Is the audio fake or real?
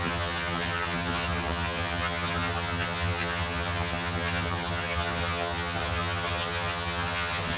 fake